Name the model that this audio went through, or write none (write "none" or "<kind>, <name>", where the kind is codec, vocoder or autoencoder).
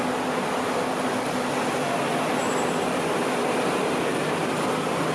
none